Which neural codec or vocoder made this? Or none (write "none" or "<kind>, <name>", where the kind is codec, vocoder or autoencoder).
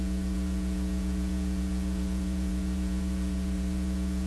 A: vocoder, Vocos